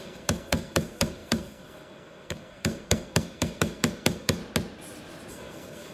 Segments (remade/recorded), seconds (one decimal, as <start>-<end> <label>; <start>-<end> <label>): 0.0-4.4 remade; 4.4-5.3 recorded; 5.3-5.9 remade